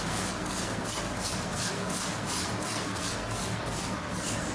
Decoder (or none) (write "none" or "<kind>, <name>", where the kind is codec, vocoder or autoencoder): codec, SNAC